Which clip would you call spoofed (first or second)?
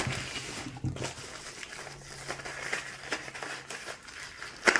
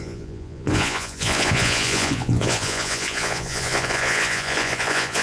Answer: second